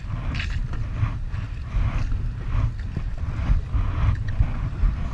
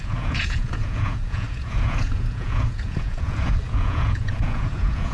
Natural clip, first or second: first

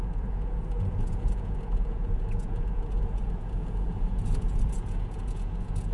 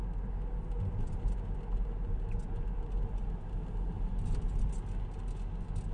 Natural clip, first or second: second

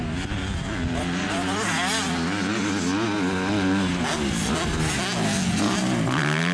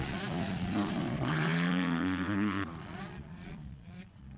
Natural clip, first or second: first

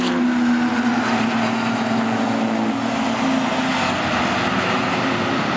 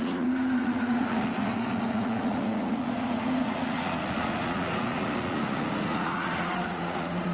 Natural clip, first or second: first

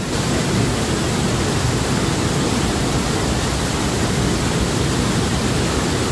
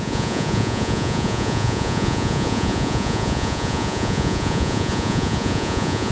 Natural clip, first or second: first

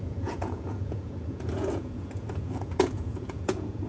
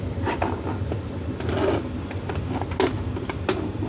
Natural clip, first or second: second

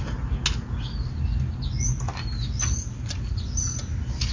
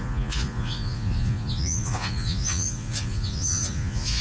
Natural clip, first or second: first